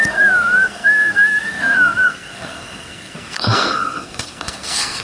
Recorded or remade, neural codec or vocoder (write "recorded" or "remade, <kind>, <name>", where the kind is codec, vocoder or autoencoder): remade, codec, SNAC